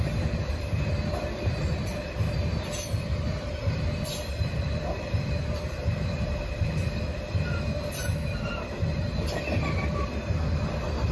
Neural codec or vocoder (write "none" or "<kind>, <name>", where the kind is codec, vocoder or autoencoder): none